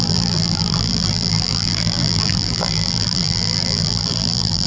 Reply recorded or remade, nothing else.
remade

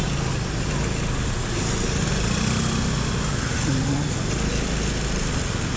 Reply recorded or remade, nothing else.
recorded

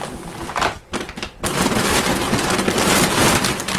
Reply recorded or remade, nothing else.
recorded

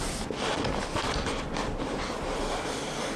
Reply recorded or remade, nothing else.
remade